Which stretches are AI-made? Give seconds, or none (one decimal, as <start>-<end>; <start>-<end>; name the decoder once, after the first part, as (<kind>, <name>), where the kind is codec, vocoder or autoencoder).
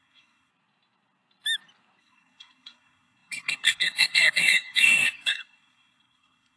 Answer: 0.0-0.5 (codec, SNAC); 2.0-6.6